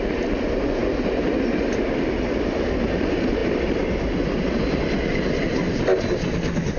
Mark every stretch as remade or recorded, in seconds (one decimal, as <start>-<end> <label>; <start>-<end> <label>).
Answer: 0.0-6.8 recorded